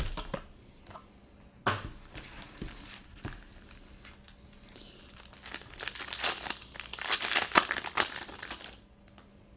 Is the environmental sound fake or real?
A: real